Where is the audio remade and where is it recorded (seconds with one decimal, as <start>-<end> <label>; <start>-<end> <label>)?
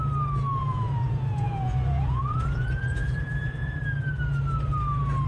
0.0-0.6 recorded; 0.6-3.8 remade; 3.8-5.3 recorded